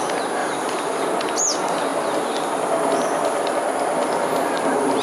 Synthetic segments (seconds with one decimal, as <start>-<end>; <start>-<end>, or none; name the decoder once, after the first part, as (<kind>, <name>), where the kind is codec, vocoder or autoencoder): 0.4-1.0 (vocoder, BigVGAN v2)